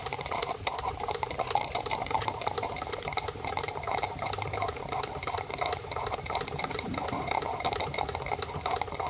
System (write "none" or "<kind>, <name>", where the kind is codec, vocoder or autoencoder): vocoder, BigVGAN v2